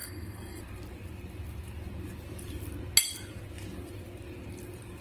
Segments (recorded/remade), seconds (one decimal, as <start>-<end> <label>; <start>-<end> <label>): 0.0-0.6 remade; 0.6-5.0 recorded